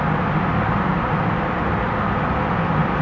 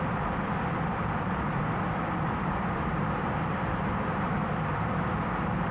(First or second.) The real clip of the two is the first